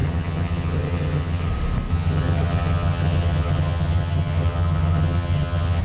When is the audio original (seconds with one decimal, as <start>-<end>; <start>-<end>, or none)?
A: 1.5-1.9